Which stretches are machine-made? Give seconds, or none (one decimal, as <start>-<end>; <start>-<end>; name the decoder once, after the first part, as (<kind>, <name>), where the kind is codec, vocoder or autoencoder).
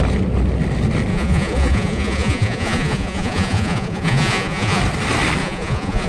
1.1-4.8 (vocoder, Vocos); 5.4-6.1